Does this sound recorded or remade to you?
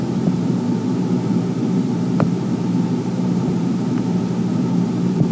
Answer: remade